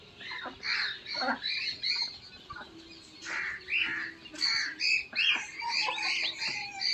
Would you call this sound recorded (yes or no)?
yes